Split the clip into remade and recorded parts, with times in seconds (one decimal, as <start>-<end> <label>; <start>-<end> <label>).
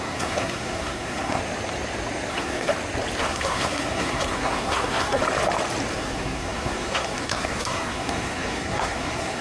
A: 0.0-1.4 remade; 1.4-2.3 recorded; 2.3-2.7 remade; 2.7-3.2 recorded; 3.2-5.2 remade; 5.2-5.9 recorded; 5.9-9.4 remade